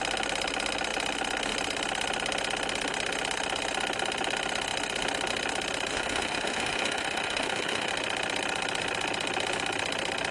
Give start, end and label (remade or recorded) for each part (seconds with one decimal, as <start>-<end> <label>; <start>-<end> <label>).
0.0-5.9 recorded; 5.9-7.9 remade; 7.9-10.3 recorded